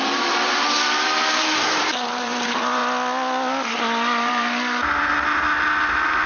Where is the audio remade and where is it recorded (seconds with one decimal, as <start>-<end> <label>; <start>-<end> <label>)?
0.0-2.8 remade; 2.8-3.7 recorded; 3.7-5.1 remade; 5.1-6.3 recorded